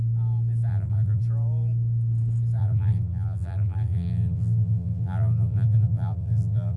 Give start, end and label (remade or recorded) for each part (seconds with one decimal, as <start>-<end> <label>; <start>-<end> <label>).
0.0-0.7 recorded; 0.7-1.2 remade; 1.2-2.6 recorded; 2.6-6.8 remade